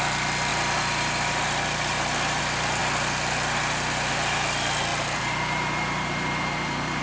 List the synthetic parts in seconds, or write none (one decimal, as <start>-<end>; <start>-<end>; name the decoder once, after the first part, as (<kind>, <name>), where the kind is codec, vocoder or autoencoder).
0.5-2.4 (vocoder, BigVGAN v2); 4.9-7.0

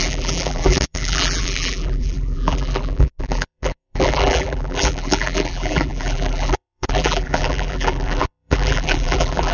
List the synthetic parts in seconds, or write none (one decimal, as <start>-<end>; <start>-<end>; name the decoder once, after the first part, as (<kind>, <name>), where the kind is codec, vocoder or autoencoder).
0.0-9.5 (vocoder, BigVGAN v2)

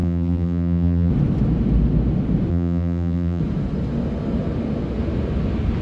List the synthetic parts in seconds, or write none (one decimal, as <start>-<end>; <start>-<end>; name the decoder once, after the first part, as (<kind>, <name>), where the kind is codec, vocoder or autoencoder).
0.0-1.1 (vocoder, BigVGAN v2); 2.5-3.4

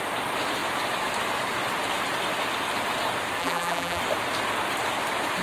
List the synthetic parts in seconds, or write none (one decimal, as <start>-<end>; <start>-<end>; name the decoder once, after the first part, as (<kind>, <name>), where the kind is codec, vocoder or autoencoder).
3.4-4.0 (vocoder, BigVGAN v2)

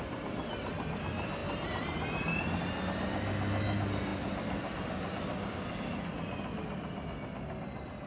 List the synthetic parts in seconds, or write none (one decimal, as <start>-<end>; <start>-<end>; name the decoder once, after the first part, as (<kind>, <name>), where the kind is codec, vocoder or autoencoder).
4.1-5.7 (vocoder, BigVGAN v2)

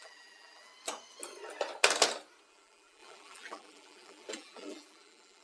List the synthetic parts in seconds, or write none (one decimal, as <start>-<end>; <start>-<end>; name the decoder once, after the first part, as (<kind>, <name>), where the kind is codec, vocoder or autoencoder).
0.0-0.7 (vocoder, BigVGAN v2); 2.5-5.4

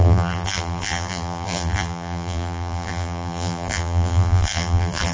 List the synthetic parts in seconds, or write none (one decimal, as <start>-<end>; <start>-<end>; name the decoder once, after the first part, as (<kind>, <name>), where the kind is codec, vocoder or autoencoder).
0.0-5.1 (vocoder, BigVGAN v2)

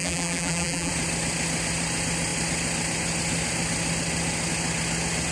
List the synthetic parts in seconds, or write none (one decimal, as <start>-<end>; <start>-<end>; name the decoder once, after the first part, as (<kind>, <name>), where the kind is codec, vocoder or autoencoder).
0.0-0.9 (vocoder, BigVGAN v2)